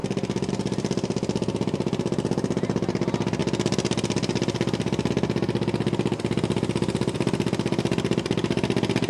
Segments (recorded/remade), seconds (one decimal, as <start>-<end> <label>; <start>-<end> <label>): 0.0-9.1 recorded